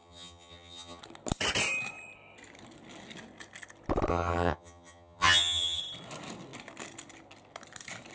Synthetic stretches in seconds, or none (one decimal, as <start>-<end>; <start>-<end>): 0.0-1.0; 4.1-5.8